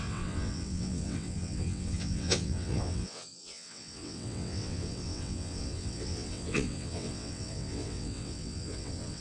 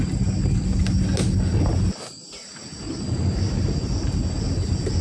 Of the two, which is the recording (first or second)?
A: second